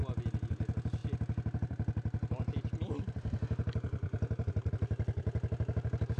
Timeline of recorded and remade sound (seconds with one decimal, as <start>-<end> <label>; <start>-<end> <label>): 0.0-6.2 recorded